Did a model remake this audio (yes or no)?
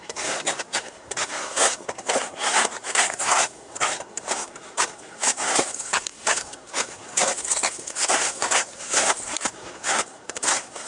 yes